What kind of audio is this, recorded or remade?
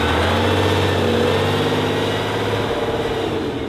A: recorded